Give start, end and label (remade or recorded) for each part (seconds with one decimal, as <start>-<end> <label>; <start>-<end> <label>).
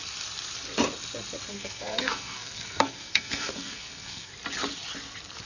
0.0-1.5 recorded; 1.5-4.3 remade; 4.3-5.5 recorded